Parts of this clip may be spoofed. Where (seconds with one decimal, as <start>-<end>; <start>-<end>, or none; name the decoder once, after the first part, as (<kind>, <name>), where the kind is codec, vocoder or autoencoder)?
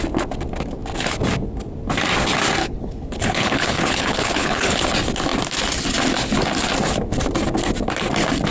2.6-4.8 (codec, HILCodec)